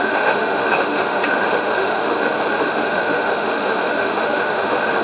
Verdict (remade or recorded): remade